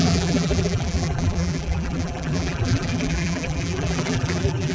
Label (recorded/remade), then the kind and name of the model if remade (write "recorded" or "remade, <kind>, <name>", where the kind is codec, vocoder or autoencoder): remade, vocoder, BigVGAN v2